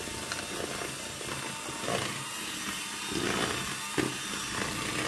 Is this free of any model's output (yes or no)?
yes